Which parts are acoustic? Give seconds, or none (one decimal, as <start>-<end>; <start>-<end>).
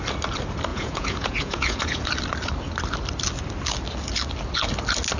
0.0-0.7; 2.1-5.2